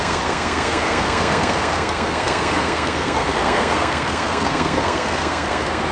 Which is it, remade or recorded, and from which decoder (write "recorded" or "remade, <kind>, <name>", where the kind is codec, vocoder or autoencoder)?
remade, codec, SNAC